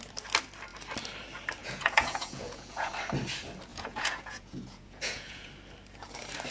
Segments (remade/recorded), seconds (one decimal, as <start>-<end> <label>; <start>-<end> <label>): 0.0-1.6 recorded; 1.6-2.9 remade; 2.9-3.7 recorded; 3.7-5.5 remade; 5.5-6.5 recorded